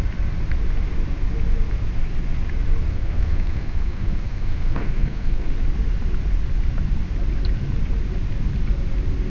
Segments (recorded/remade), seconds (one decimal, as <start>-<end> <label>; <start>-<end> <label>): 0.0-2.9 recorded; 2.9-5.5 remade; 5.5-9.3 recorded